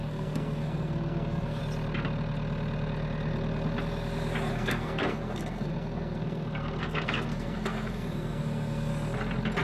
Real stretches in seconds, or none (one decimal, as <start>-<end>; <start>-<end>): 1.6-4.5; 8.9-9.6